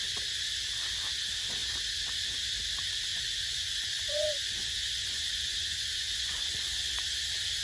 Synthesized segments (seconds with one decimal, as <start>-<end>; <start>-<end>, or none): 3.1-7.0